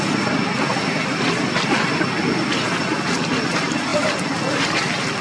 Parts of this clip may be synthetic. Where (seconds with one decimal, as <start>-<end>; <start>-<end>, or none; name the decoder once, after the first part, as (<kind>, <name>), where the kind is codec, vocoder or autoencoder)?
none